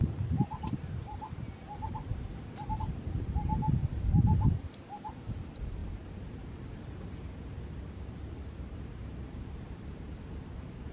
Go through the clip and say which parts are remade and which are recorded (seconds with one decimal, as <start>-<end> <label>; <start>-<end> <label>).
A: 0.0-5.8 remade; 5.8-7.7 recorded; 7.7-10.9 remade